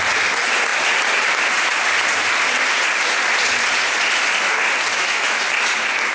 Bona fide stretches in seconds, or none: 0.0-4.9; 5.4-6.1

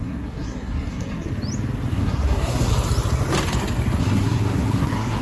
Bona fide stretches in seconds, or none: 1.3-1.9; 2.7-4.0

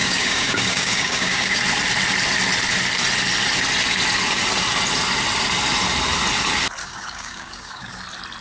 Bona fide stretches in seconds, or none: 1.6-6.8; 8.0-8.4

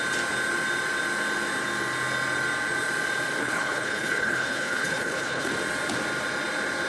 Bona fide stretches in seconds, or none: 0.0-3.4; 5.5-6.9

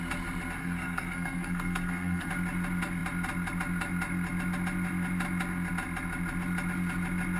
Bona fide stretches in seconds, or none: 0.0-0.6; 2.3-7.4

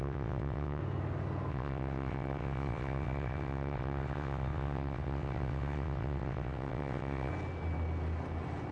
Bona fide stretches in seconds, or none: 0.8-1.5; 7.3-8.7